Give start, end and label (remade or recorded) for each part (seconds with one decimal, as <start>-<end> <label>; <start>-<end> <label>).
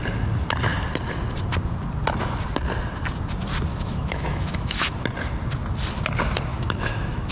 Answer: 0.0-3.7 recorded; 3.7-4.9 remade; 4.9-6.5 recorded; 6.5-7.3 remade